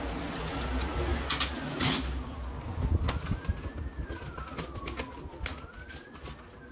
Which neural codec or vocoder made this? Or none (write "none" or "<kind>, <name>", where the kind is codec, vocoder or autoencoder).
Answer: none